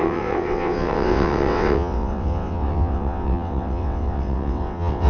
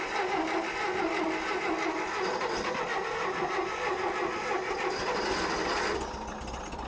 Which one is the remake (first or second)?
first